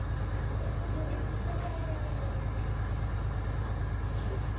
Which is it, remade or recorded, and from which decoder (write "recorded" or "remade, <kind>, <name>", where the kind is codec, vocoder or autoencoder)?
recorded